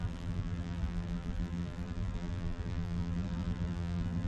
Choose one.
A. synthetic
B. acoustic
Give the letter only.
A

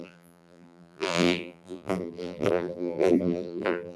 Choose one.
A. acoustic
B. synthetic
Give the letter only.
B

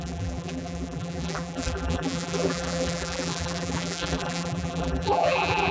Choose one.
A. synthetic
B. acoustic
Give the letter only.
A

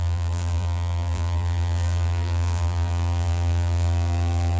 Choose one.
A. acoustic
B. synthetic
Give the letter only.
B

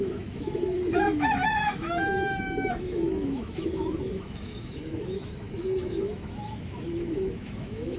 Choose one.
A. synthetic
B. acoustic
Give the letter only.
A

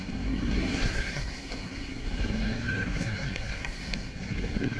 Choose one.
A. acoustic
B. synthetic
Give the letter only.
B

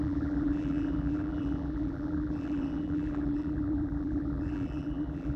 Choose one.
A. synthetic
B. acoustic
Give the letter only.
A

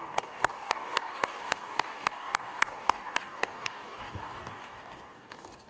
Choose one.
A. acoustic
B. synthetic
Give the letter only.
B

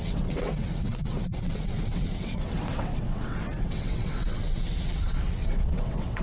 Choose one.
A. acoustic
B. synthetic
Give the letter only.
B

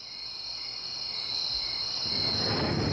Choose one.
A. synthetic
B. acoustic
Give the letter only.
B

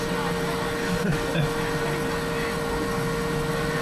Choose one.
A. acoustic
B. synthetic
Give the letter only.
A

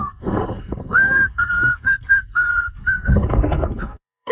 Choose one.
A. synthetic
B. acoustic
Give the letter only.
A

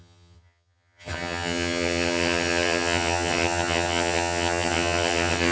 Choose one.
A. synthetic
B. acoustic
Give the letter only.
A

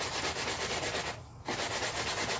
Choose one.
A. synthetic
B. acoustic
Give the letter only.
B